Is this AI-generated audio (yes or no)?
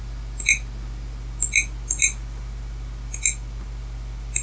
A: no